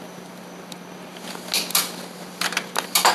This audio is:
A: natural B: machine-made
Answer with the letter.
A